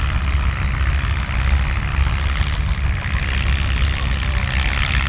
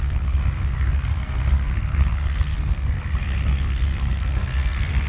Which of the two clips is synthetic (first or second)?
second